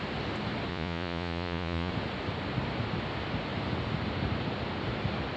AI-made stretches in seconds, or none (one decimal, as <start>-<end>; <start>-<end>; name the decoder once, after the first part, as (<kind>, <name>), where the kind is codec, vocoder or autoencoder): 0.7-1.9 (vocoder, Vocos)